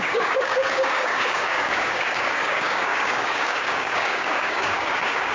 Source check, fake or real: fake